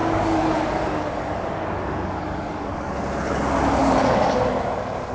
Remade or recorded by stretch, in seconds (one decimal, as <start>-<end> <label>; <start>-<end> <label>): 0.0-2.9 remade; 2.9-3.8 recorded; 3.8-4.4 remade; 4.4-5.1 recorded